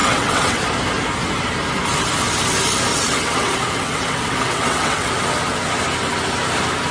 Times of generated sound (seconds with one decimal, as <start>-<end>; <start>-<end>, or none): 0.0-0.6; 2.9-5.1